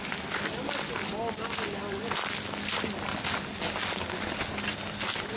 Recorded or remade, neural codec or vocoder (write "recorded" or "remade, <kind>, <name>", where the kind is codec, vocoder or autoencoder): recorded